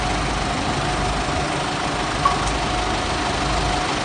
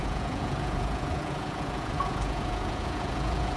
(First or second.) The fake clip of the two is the second